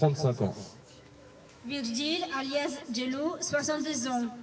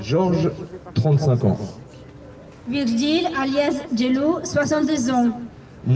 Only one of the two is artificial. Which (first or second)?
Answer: first